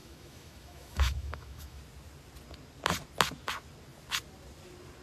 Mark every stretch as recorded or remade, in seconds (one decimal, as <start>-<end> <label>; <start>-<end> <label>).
0.0-1.8 remade; 1.8-5.0 recorded